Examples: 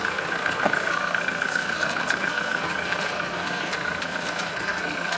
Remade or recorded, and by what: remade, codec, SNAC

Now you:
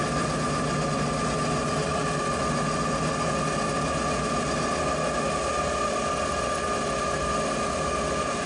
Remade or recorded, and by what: recorded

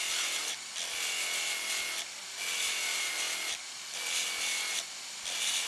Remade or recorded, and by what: recorded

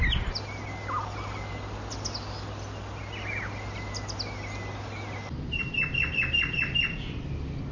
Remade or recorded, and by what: recorded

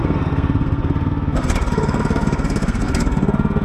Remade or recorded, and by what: remade, codec, SNAC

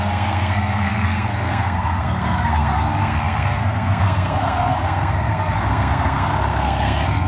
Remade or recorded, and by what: remade, codec, SNAC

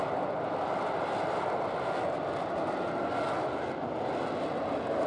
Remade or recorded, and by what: recorded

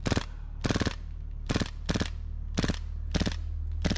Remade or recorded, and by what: recorded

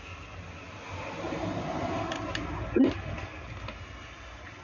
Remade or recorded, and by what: recorded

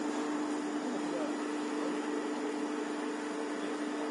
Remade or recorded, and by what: recorded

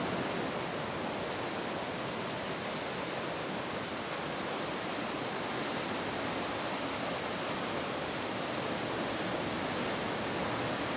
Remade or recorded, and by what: recorded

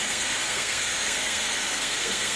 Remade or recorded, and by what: remade, codec, SNAC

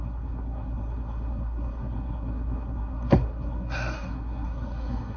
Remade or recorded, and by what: remade, codec, SNAC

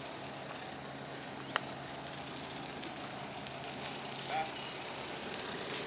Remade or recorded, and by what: recorded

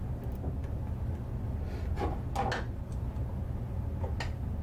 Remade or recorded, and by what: recorded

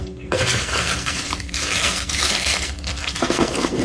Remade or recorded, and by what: remade, codec, SNAC